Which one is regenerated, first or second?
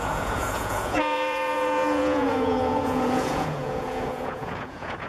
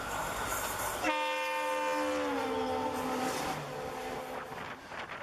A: first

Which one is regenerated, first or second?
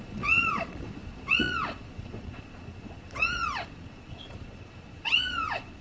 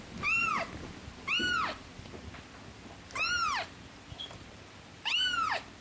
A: first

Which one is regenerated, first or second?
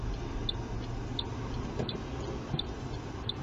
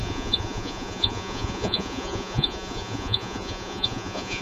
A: second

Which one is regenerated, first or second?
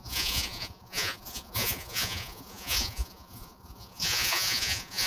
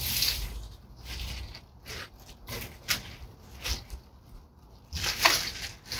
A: first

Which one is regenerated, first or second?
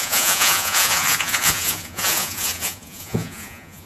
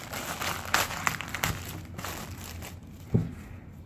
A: first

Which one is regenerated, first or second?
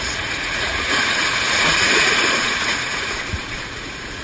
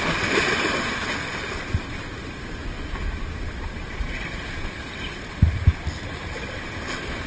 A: first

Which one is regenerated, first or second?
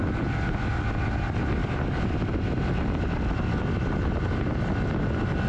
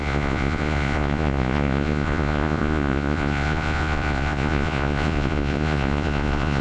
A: second